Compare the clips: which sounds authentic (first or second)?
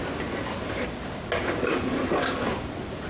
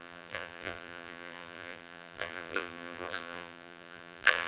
first